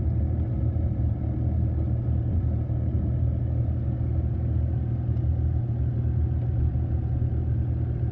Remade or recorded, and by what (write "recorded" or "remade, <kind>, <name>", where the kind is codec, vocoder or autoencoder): recorded